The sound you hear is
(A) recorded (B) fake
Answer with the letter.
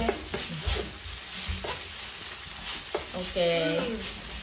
A